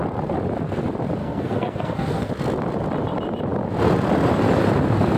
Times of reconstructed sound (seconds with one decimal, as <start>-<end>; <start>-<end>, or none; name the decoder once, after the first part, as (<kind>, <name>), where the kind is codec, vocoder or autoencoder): 1.2-2.3 (codec, SNAC)